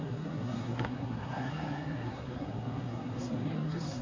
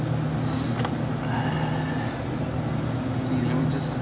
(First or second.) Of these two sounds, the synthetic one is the first